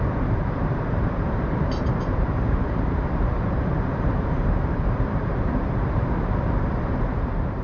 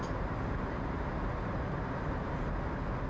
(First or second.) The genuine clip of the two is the second